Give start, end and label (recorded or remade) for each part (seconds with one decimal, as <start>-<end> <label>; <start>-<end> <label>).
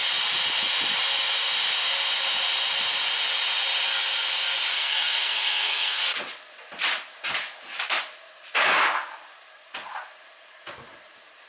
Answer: 0.0-4.7 recorded; 4.7-6.0 remade; 6.0-11.5 recorded